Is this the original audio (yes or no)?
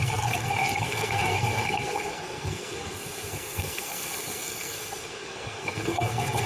no